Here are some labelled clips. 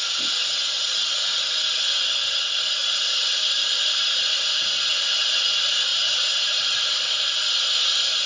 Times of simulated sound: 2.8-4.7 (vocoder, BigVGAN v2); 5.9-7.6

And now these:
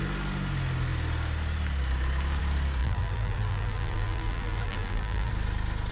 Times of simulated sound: 2.8-5.3 (vocoder, BigVGAN v2)

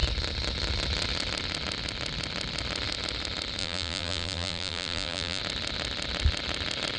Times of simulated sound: 3.6-5.4 (vocoder, BigVGAN v2)

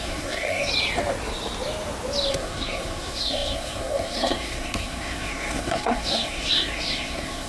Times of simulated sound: 0.0-0.7 (codec, SNAC); 2.3-7.5

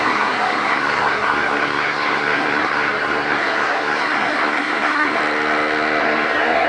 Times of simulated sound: 0.0-5.2 (codec, SNAC); 6.0-6.7

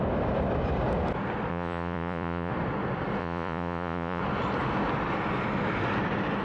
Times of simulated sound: 1.5-2.5 (vocoder, Vocos); 3.2-4.2

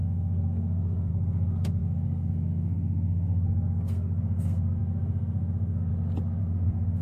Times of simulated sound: 0.0-5.9 (codec, SNAC); 6.4-7.0